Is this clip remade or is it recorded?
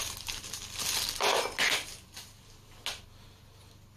recorded